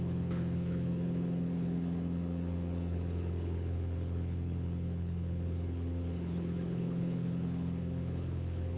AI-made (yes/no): yes